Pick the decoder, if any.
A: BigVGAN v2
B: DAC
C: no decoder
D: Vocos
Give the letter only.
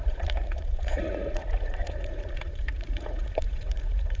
D